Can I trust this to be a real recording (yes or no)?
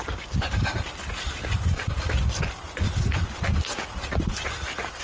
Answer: yes